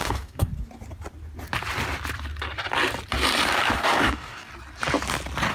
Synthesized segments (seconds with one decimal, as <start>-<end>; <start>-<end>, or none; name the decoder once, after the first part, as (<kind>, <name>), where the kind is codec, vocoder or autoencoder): 0.0-0.5 (codec, DAC); 3.8-4.5